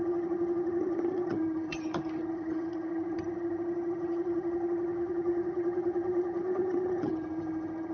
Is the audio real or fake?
fake